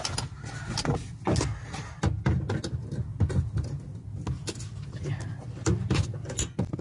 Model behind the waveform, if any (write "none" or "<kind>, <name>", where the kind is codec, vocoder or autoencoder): none